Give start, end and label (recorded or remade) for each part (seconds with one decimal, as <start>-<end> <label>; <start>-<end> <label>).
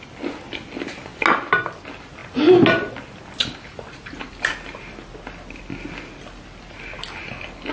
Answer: 0.0-7.7 recorded